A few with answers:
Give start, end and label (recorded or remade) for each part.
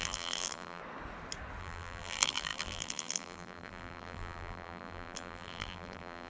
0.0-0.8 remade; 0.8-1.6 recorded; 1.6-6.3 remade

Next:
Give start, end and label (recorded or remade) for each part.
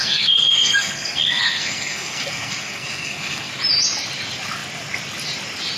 0.0-3.5 remade; 3.5-5.8 recorded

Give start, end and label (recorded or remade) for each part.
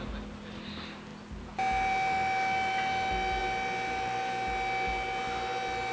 0.0-5.9 recorded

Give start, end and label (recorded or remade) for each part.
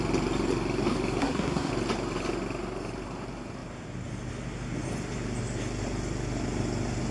0.0-1.2 recorded; 1.2-1.7 remade; 1.7-7.1 recorded